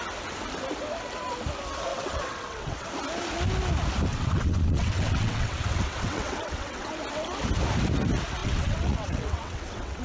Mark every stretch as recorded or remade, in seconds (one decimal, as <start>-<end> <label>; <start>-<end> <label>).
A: 0.0-1.9 recorded; 1.9-2.9 remade; 2.9-4.1 recorded; 4.1-6.9 remade; 6.9-8.4 recorded; 8.4-10.0 remade